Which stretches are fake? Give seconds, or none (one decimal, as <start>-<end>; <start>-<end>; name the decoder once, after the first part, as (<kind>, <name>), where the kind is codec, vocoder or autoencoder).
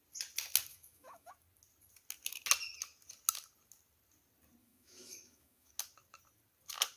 0.7-1.3 (autoencoder, DAC-VAE); 4.6-5.7